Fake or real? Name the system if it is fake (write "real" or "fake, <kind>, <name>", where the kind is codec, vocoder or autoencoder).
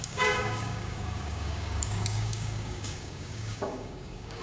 fake, codec, DAC